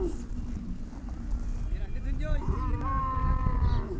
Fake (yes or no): no